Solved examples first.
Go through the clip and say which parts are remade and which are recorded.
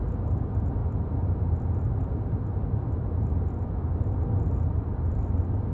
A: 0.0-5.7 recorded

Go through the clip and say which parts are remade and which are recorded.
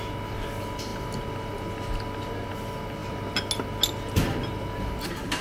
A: 0.0-5.4 recorded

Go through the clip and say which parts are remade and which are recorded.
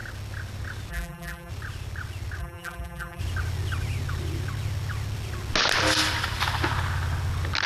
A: 0.0-0.9 recorded; 0.9-1.5 remade; 1.5-2.4 recorded; 2.4-3.2 remade; 3.2-7.7 recorded